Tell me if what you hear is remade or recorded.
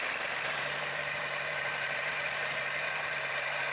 remade